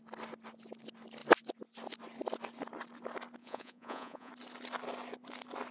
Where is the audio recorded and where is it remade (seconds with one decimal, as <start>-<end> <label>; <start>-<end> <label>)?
0.0-3.4 recorded; 3.4-4.3 remade; 4.3-5.7 recorded

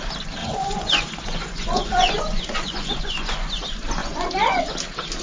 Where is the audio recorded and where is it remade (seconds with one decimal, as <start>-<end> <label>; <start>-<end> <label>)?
0.0-0.4 recorded; 0.4-3.5 remade; 3.5-4.0 recorded; 4.0-4.6 remade; 4.6-5.2 recorded

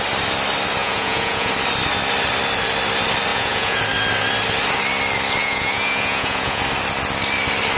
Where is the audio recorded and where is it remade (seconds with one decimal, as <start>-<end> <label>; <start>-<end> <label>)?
0.0-0.8 recorded; 0.8-1.5 remade; 1.5-3.3 recorded; 3.3-3.8 remade; 3.8-5.4 recorded; 5.4-6.6 remade; 6.6-7.8 recorded

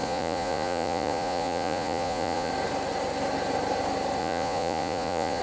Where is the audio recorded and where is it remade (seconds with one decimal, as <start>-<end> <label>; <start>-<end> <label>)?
0.0-2.5 remade; 2.5-4.2 recorded; 4.2-5.4 remade